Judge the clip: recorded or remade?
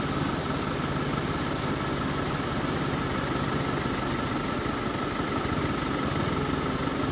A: recorded